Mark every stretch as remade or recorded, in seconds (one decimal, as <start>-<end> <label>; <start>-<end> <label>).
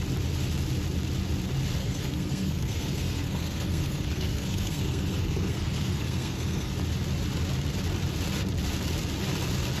0.0-1.8 recorded; 1.8-6.7 remade; 6.7-9.8 recorded